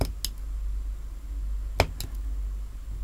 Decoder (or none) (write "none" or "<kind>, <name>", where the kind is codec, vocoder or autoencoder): none